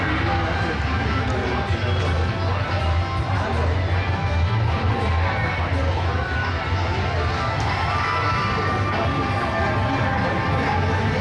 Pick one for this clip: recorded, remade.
recorded